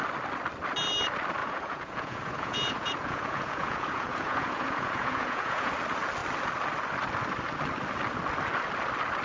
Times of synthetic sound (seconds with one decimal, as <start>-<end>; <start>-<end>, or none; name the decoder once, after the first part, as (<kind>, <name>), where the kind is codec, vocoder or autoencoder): 1.4-5.7 (vocoder, Vocos)